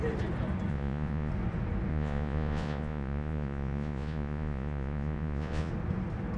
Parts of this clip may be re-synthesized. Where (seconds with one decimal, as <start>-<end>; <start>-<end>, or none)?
0.7-1.3; 1.9-5.7